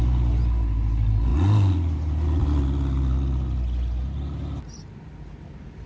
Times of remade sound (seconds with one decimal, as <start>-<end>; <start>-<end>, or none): none